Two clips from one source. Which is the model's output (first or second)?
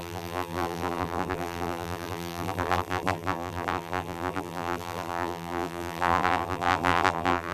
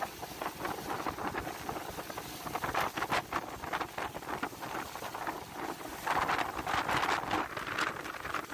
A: first